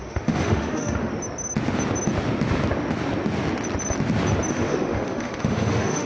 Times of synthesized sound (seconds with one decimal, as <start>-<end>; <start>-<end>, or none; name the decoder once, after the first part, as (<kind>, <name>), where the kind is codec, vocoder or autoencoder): 0.0-1.1 (autoencoder, DAC-VAE); 4.5-6.1